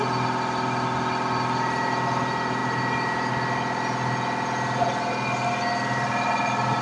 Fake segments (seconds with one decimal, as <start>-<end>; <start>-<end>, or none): 2.6-3.3